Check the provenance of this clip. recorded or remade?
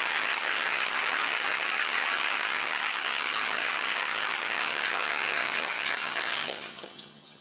remade